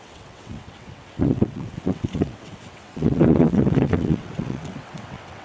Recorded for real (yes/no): no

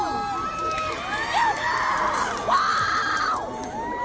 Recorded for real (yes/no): yes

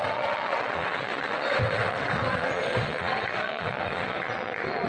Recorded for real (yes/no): no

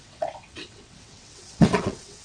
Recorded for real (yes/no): no